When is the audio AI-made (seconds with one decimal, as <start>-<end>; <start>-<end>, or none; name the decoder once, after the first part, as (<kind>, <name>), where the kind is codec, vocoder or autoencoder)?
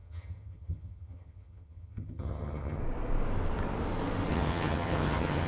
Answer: 0.0-2.8 (vocoder, HiFi-GAN); 4.3-5.5